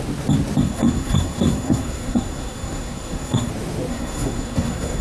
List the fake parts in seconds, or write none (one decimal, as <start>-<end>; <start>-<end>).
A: 0.6-3.5; 3.9-5.0